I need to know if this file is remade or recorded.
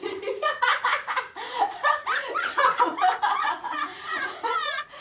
remade